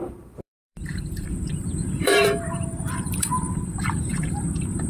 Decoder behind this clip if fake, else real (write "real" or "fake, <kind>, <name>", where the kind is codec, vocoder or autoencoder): fake, vocoder, BigVGAN v2